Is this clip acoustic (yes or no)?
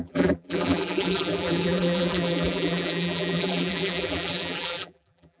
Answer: no